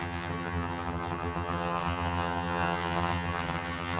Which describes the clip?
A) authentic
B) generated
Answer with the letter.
B